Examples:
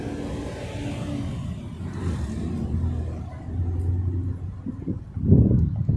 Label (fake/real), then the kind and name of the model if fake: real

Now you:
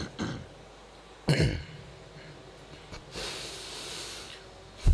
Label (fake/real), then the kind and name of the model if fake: real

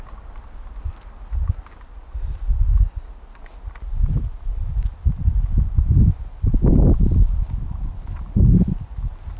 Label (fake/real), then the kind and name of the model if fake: real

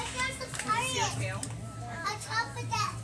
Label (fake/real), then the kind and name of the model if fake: real